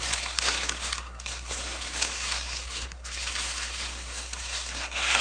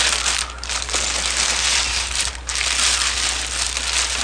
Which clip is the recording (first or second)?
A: second